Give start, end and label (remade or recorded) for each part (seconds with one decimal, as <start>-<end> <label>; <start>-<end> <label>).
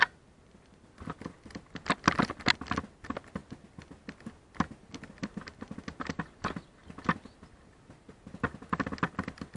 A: 0.0-9.6 recorded